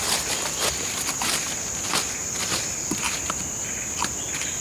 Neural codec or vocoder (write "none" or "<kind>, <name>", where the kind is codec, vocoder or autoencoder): none